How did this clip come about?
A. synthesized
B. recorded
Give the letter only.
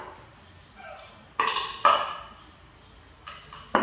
B